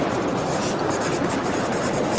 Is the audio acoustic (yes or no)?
yes